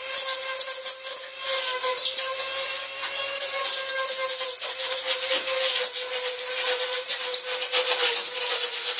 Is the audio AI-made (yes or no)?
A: no